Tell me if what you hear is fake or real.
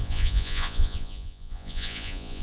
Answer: fake